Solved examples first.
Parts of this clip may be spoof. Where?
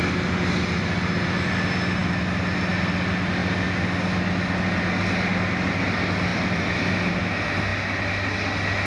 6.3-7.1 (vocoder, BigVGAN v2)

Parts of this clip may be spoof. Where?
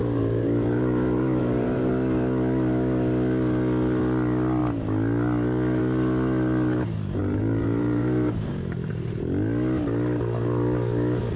0.0-1.9 (vocoder, BigVGAN v2); 7.2-8.9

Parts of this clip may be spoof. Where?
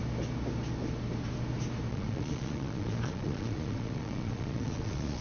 1.9-5.2 (vocoder, Vocos)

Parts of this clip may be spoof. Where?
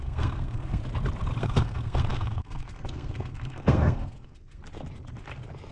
0.0-0.8 (codec, SNAC); 1.4-4.6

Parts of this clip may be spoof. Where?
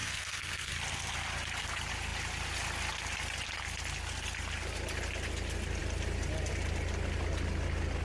0.0-0.7 (codec, SNAC)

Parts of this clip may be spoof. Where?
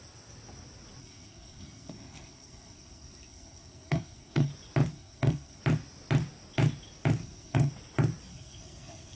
1.0-4.5 (codec, SNAC); 4.9-5.6; 7.2-7.7; 8.3-9.2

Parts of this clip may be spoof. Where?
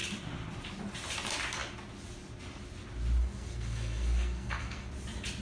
3.2-4.9 (codec, SNAC)